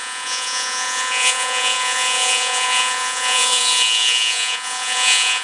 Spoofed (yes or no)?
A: yes